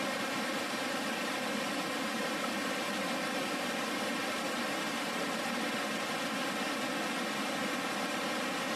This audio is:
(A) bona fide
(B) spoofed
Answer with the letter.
A